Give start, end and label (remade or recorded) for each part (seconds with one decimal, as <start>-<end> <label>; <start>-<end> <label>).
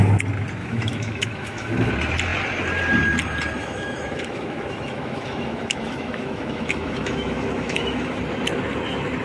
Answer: 0.0-0.6 recorded; 0.6-1.9 remade; 1.9-3.6 recorded; 3.6-8.2 remade; 8.2-9.2 recorded